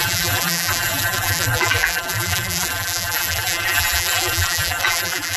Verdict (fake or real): fake